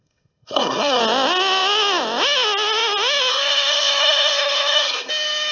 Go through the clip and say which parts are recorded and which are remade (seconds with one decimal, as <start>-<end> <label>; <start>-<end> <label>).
0.0-1.0 remade; 1.0-3.3 recorded; 3.3-5.1 remade; 5.1-5.5 recorded